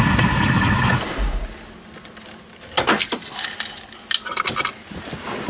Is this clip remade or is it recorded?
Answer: recorded